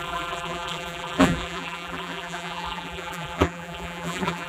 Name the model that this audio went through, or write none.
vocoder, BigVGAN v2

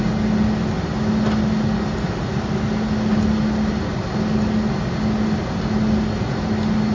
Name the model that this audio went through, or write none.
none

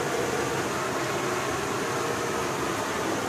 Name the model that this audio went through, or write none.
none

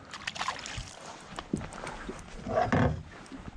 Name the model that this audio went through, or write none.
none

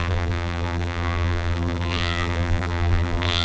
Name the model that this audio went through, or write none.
vocoder, BigVGAN v2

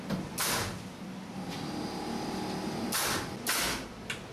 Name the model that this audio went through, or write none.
none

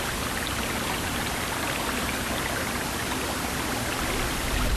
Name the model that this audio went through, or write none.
vocoder, BigVGAN v2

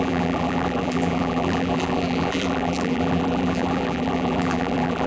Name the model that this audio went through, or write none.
vocoder, BigVGAN v2